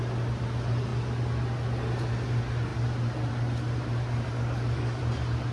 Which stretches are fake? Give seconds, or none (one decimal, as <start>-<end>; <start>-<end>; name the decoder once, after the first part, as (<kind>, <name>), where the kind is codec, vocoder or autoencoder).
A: 4.3-5.0 (codec, DAC)